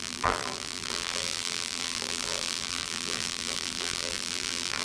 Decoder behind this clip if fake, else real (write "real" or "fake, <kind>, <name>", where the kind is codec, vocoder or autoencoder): fake, vocoder, BigVGAN v2